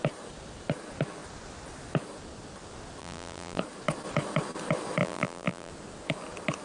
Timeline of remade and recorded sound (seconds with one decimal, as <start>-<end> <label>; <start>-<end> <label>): 0.0-3.0 recorded; 3.0-3.6 remade; 3.6-5.0 recorded; 5.0-5.7 remade; 5.7-6.6 recorded